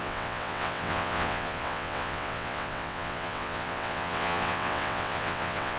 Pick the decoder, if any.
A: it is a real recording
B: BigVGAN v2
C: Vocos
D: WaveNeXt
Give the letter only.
D